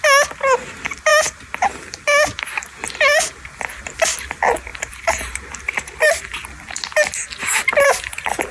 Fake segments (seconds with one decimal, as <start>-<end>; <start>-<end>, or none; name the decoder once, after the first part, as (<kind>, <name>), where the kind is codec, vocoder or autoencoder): 4.7-6.3 (vocoder, BigVGAN v2)